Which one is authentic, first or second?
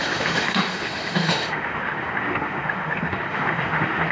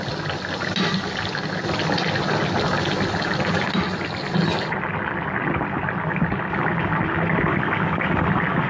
second